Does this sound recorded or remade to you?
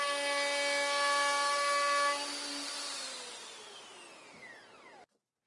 recorded